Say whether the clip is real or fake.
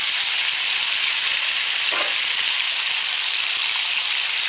real